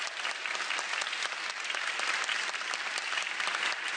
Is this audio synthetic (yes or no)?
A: no